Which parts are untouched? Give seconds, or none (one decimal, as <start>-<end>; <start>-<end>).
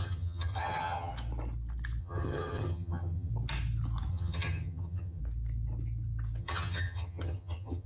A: 1.1-2.0; 3.3-4.1; 5.2-6.4